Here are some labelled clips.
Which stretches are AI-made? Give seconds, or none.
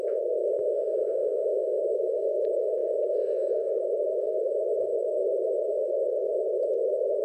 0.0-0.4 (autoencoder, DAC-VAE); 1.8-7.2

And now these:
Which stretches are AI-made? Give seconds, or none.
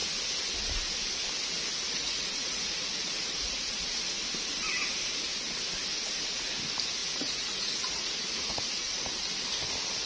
2.0-4.2 (vocoder, Vocos); 7.0-9.1